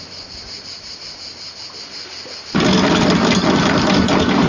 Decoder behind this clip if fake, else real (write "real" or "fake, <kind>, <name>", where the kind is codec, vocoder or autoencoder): real